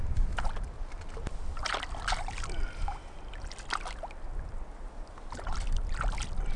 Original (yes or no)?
yes